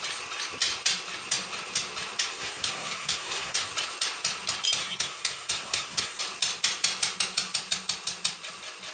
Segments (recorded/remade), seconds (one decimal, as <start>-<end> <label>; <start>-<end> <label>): 0.0-2.3 recorded; 2.3-3.7 remade; 3.7-4.8 recorded; 4.8-6.2 remade; 6.2-8.9 recorded